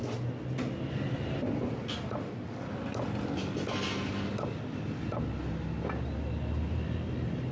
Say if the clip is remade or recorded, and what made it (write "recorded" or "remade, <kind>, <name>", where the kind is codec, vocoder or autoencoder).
recorded